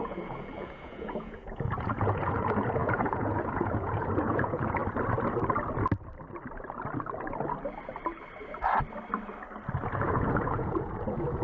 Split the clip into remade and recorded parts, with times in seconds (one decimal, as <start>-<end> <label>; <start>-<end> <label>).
0.0-4.8 remade; 4.8-10.0 recorded; 10.0-11.4 remade